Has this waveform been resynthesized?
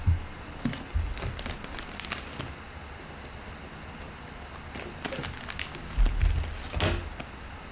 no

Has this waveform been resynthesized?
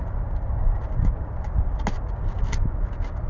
no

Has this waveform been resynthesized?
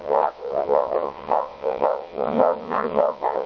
yes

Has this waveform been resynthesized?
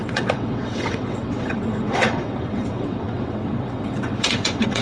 yes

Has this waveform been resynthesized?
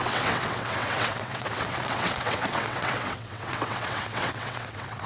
yes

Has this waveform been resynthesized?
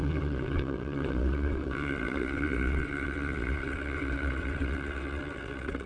yes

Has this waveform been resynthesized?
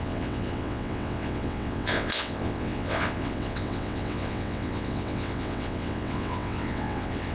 yes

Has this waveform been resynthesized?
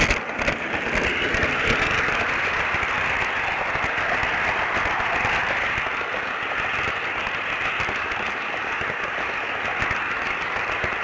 no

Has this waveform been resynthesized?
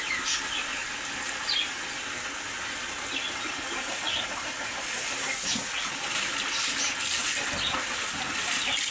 no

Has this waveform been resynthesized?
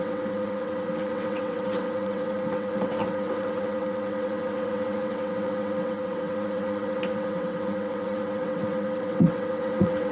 yes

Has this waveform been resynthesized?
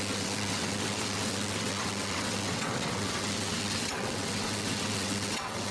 yes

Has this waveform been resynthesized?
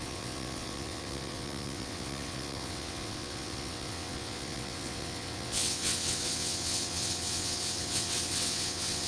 yes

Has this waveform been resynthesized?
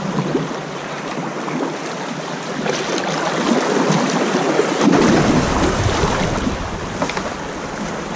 no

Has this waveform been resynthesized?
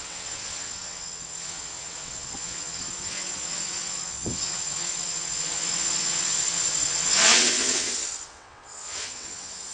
yes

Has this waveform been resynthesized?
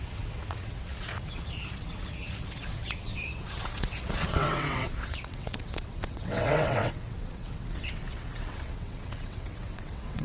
yes